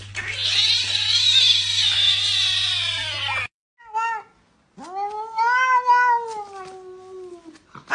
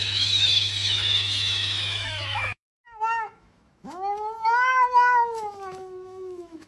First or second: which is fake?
second